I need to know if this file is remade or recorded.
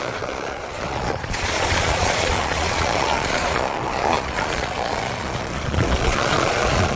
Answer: remade